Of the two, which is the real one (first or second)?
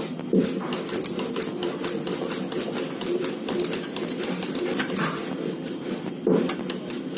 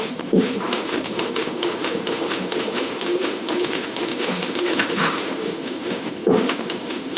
first